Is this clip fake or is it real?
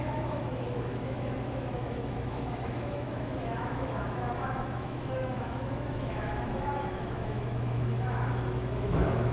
fake